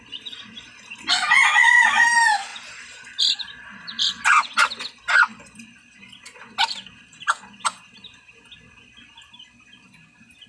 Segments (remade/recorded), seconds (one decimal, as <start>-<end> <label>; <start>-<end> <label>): 0.0-10.5 recorded